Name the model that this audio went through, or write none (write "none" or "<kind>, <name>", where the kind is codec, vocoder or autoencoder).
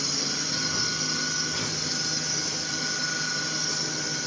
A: none